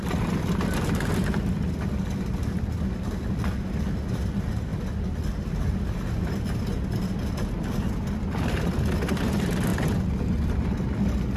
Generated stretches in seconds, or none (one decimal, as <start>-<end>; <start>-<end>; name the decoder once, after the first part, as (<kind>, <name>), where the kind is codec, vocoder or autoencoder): none